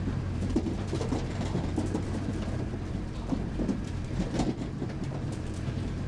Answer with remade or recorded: remade